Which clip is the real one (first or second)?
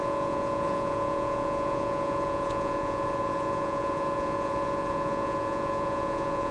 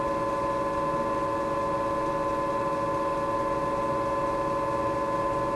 second